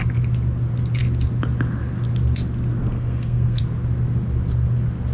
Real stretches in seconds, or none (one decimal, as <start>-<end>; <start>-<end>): 0.0-2.8; 3.6-5.1